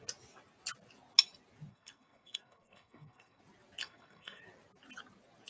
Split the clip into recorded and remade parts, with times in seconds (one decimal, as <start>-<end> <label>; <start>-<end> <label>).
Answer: 0.0-1.7 recorded; 1.7-3.4 remade; 3.4-3.8 recorded; 3.8-4.4 remade; 4.4-5.5 recorded